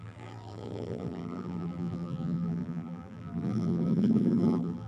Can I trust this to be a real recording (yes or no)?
no